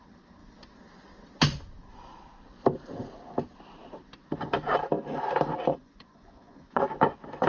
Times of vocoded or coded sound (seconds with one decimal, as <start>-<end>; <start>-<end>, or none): 5.7-6.8